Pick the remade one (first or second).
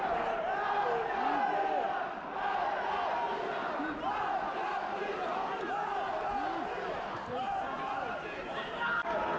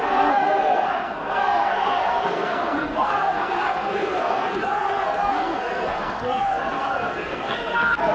second